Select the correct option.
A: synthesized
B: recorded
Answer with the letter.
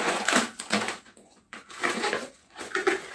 A